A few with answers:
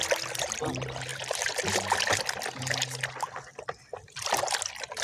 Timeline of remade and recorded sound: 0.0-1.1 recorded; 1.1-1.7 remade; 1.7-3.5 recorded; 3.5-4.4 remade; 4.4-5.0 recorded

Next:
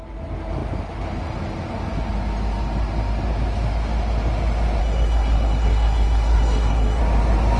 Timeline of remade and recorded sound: 0.0-4.8 recorded; 4.8-7.0 remade; 7.0-7.6 recorded

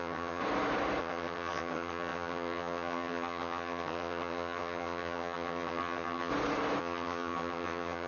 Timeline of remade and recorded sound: 0.0-0.4 remade; 0.4-1.0 recorded; 1.0-6.3 remade; 6.3-6.8 recorded; 6.8-8.1 remade

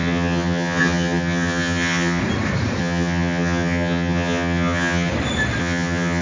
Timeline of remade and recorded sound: 0.0-2.2 remade; 2.2-2.8 recorded; 2.8-5.1 remade; 5.1-5.6 recorded; 5.6-6.2 remade

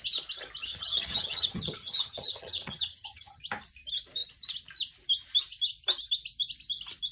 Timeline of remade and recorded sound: 0.0-0.7 recorded; 0.7-3.4 remade; 3.4-7.1 recorded